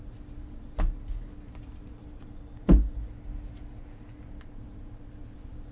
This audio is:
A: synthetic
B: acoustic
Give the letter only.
B